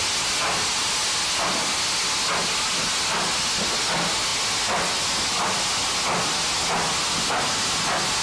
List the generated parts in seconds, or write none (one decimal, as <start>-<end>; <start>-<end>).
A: none

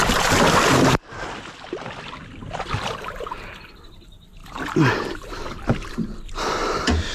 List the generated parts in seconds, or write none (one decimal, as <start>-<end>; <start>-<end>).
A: none

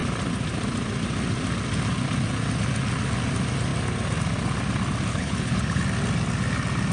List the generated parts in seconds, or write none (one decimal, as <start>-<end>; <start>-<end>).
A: 5.1-5.8

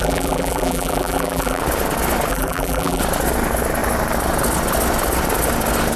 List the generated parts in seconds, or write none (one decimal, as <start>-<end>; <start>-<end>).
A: 0.0-1.6; 2.3-3.0

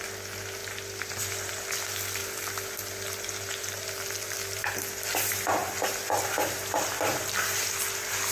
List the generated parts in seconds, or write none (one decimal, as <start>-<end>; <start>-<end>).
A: 0.6-1.5; 2.2-4.6; 5.6-8.3

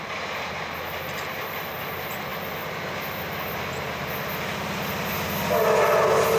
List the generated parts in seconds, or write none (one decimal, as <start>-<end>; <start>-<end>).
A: none